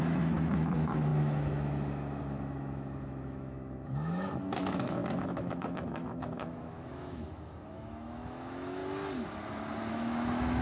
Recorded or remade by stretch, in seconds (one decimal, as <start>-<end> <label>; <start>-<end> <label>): 0.0-8.8 remade; 8.8-9.9 recorded; 9.9-10.6 remade